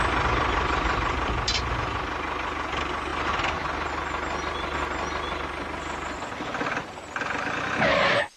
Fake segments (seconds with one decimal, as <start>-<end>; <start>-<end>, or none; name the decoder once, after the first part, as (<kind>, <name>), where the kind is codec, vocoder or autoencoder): none